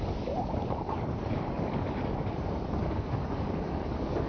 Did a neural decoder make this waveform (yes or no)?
yes